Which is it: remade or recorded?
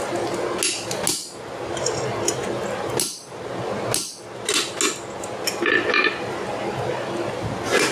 recorded